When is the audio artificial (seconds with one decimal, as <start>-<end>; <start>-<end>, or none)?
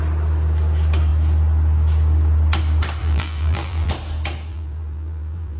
3.0-3.9; 4.5-5.6